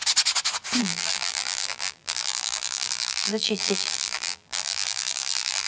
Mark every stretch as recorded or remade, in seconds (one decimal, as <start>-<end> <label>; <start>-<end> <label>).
0.0-0.8 recorded; 0.8-5.7 remade

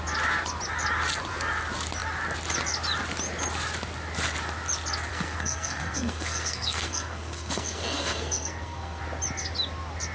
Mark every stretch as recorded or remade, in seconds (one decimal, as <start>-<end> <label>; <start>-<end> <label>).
0.0-5.1 recorded; 5.1-9.0 remade; 9.0-10.1 recorded

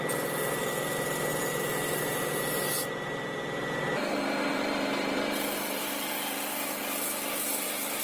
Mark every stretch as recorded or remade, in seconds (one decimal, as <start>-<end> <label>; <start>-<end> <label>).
0.0-4.5 recorded; 4.5-5.8 remade; 5.8-8.0 recorded

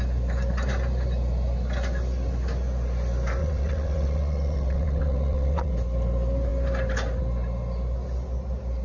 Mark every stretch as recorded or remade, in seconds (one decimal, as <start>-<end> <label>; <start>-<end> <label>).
0.0-3.4 recorded; 3.4-5.7 remade; 5.7-8.8 recorded

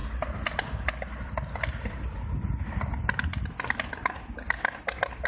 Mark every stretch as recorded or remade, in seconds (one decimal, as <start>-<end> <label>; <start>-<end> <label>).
0.0-5.3 recorded

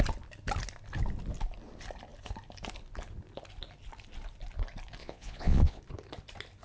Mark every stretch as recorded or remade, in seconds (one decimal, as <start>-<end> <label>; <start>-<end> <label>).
0.0-5.0 recorded; 5.0-5.8 remade; 5.8-6.6 recorded

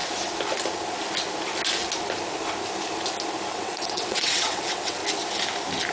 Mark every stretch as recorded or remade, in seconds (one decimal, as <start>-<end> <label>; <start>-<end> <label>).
0.0-3.5 recorded; 3.5-5.0 remade; 5.0-5.9 recorded

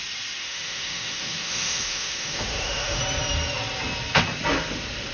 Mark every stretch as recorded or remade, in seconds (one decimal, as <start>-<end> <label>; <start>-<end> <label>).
0.0-0.4 recorded; 0.4-3.0 remade; 3.0-5.1 recorded